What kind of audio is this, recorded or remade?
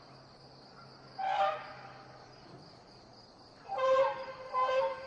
recorded